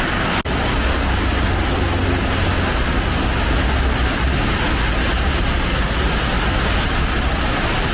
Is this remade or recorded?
recorded